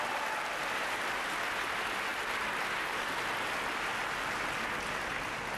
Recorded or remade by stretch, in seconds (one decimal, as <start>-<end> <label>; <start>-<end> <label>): 0.0-5.6 recorded